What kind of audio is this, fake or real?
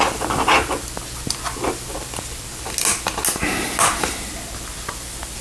real